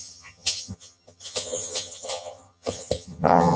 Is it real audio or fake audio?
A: fake